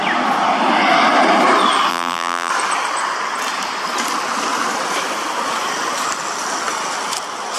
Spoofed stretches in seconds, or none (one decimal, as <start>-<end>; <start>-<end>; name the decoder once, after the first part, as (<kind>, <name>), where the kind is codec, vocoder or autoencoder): 1.9-2.5 (vocoder, BigVGAN v2)